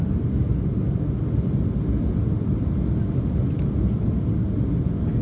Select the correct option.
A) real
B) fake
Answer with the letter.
A